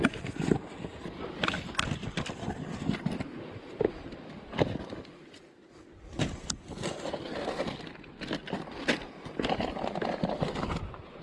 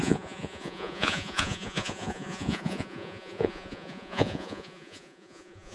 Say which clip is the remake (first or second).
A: second